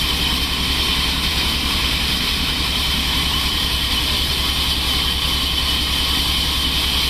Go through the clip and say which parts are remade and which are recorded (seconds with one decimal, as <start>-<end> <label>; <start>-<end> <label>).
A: 0.0-1.3 recorded; 1.3-4.3 remade; 4.3-7.1 recorded